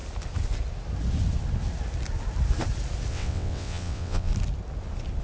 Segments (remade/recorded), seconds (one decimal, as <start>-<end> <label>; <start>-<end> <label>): 0.0-3.1 recorded; 3.1-4.3 remade; 4.3-5.2 recorded